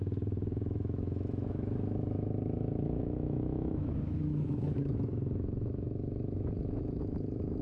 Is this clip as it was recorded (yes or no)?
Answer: no